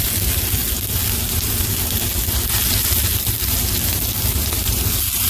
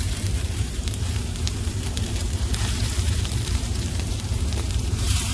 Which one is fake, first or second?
second